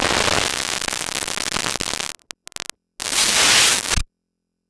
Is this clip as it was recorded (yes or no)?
yes